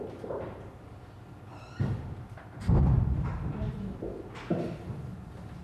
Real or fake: real